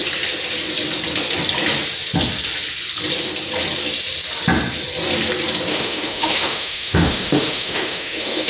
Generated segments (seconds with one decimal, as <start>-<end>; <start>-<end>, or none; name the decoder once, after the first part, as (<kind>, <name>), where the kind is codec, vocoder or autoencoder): 5.7-8.5 (autoencoder, DAC-VAE)